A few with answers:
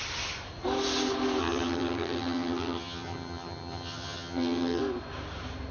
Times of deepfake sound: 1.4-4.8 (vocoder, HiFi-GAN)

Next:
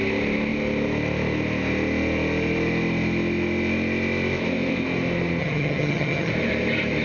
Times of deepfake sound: 5.4-6.3 (vocoder, HiFi-GAN)

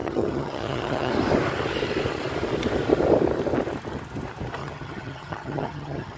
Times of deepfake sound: 0.0-1.1 (vocoder, HiFi-GAN); 4.6-6.2

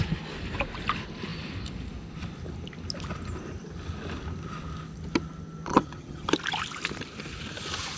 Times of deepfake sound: 5.7-6.3 (vocoder, HiFi-GAN)

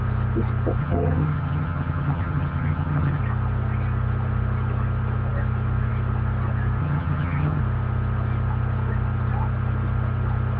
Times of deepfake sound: 0.8-3.2 (vocoder, HiFi-GAN); 6.8-7.6

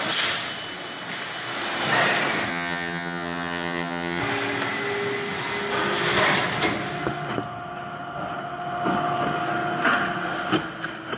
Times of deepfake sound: 2.5-4.2 (vocoder, HiFi-GAN)